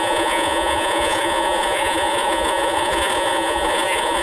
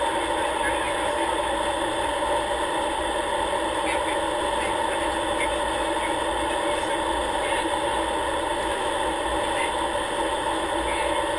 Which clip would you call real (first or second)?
second